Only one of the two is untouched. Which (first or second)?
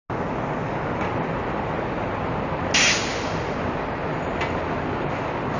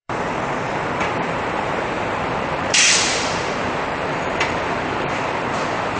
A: first